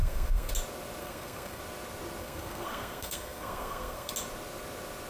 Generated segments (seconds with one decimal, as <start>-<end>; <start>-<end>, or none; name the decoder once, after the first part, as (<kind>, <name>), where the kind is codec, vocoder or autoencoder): 0.0-0.5 (codec, SNAC); 1.0-1.6; 2.2-4.1